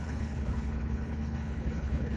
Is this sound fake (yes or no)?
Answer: yes